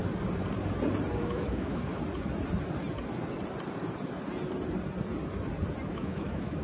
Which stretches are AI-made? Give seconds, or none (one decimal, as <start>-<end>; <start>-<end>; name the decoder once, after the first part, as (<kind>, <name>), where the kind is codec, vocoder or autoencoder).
1.2-1.9 (autoencoder, DAC-VAE); 5.9-6.6